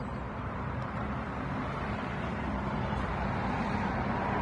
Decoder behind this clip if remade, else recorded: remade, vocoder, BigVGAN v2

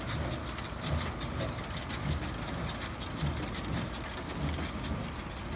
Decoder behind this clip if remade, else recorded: recorded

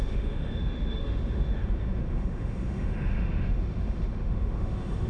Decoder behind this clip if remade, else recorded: remade, autoencoder, DAC-VAE